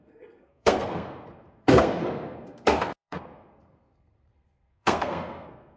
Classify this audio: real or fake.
fake